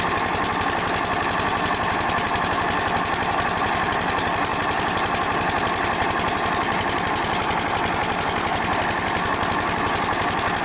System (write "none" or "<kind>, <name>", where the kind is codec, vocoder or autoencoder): none